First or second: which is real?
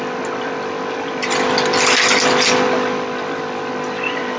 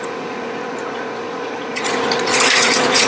first